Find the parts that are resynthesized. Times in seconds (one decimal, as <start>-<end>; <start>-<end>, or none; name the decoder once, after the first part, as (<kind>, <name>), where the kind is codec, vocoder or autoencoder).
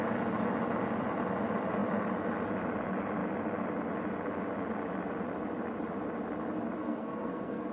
6.8-7.7 (codec, SNAC)